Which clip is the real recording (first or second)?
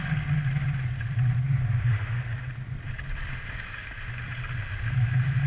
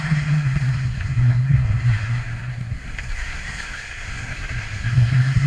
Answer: first